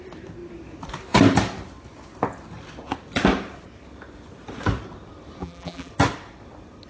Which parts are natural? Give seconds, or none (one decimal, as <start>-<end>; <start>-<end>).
0.0-5.4; 5.9-6.9